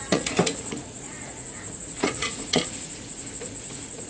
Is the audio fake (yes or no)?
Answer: yes